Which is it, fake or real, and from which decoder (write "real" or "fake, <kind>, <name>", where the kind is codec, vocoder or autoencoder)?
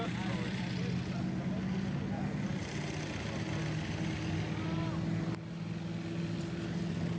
real